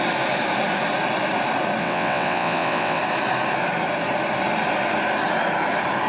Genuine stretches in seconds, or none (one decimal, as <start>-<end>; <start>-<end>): 0.0-1.8; 3.0-6.1